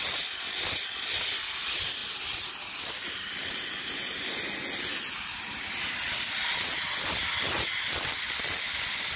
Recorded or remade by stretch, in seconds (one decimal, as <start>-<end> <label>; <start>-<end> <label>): 0.0-9.2 recorded